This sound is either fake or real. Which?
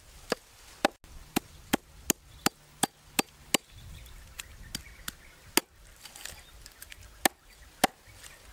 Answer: real